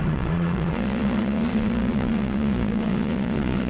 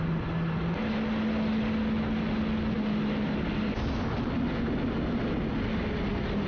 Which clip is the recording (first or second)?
second